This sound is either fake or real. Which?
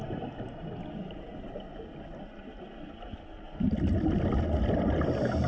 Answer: real